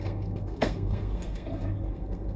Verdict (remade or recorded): remade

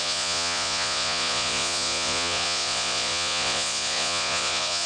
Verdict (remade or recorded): remade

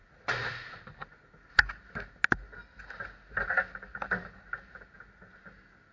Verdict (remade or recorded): recorded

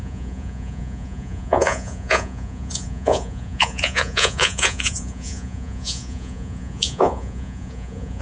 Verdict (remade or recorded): remade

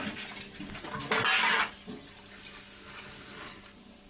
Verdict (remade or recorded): recorded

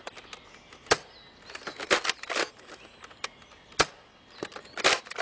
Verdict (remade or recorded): recorded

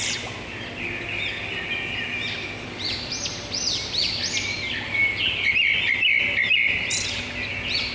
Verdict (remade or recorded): recorded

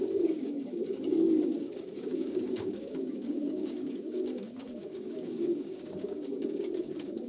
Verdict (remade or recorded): remade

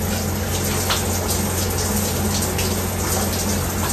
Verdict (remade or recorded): recorded